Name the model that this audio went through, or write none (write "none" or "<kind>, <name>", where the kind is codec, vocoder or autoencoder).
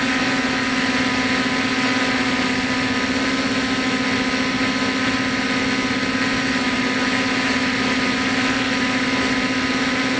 none